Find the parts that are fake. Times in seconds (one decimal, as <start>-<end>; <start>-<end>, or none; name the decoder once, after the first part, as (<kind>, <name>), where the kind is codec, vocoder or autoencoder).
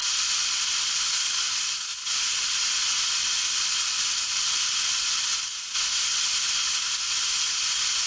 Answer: none